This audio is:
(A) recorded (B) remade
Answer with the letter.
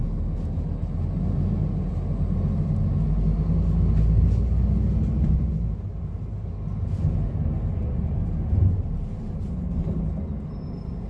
A